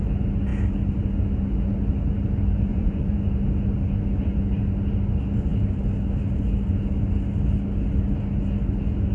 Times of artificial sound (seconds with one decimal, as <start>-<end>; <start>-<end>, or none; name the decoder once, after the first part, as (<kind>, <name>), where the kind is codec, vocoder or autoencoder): 2.7-3.2 (vocoder, Vocos)

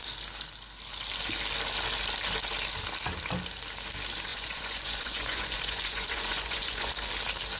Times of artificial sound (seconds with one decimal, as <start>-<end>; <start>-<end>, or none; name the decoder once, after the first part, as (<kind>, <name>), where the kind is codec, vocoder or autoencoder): 4.3-6.9 (vocoder, Vocos)

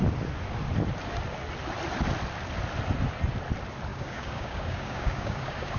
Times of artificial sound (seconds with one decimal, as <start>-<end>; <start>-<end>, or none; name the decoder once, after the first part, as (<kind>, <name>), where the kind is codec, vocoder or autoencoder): 3.9-5.8 (codec, DAC)

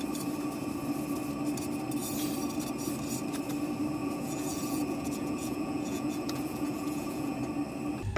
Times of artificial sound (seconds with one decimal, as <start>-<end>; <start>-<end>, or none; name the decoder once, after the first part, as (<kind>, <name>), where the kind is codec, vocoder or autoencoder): 4.0-7.4 (vocoder, Vocos)

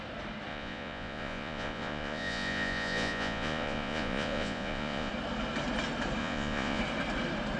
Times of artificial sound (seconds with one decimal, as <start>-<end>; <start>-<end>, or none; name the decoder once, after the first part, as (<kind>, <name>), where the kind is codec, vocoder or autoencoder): 0.5-5.1 (vocoder, Vocos); 6.2-6.8

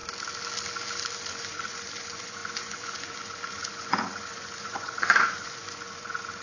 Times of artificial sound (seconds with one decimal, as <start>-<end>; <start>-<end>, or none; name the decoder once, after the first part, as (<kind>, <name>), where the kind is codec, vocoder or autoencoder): 1.3-6.4 (vocoder, Vocos)

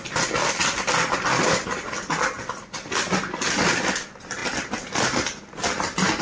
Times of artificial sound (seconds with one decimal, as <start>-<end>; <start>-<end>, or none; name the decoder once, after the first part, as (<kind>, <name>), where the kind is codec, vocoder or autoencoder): none

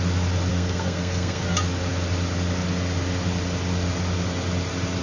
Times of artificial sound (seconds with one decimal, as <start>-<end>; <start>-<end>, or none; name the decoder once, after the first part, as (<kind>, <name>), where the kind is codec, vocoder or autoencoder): 0.5-1.4 (codec, SNAC)